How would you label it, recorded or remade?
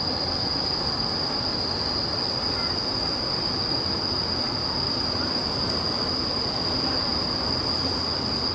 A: recorded